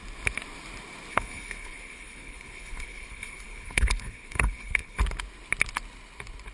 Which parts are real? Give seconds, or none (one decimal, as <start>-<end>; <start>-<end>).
0.0-1.1; 5.0-6.5